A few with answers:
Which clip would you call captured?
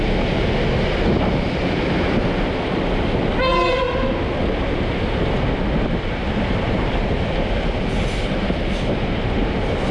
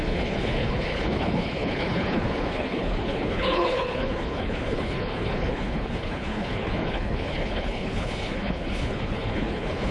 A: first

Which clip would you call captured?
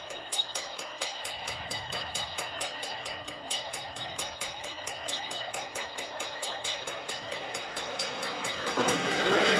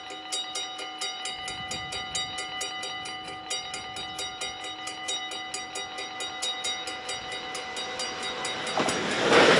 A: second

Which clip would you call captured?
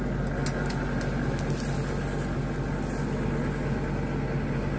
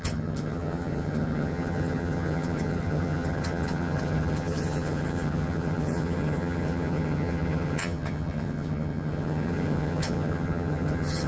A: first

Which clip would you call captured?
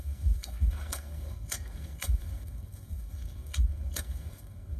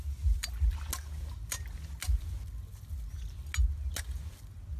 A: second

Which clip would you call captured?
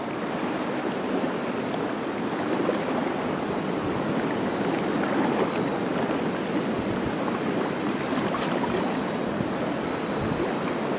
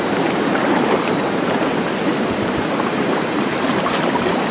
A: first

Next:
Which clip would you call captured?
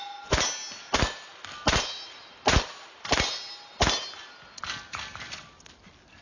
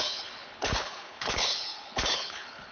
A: first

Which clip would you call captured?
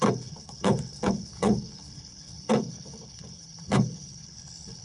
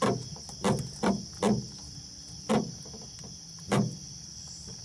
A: second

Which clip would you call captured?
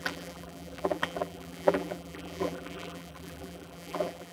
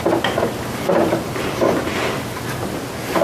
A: second